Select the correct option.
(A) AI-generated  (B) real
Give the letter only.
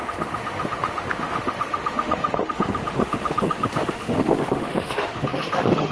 A